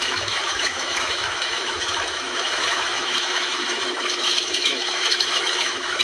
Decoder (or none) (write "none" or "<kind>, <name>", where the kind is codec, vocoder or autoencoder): autoencoder, DAC-VAE